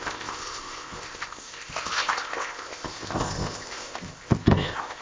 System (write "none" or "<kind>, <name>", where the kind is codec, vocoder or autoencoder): codec, ZipCodec